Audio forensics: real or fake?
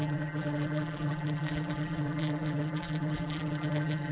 fake